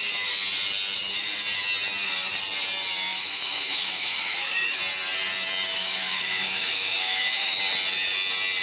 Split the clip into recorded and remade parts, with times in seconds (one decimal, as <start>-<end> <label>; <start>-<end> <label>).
0.0-3.1 recorded; 3.1-4.8 remade; 4.8-5.7 recorded; 5.7-7.6 remade; 7.6-8.6 recorded